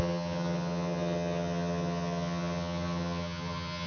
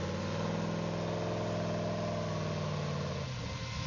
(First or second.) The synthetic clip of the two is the first